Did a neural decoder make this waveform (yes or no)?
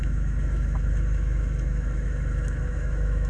yes